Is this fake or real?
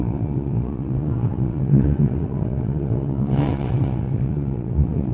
fake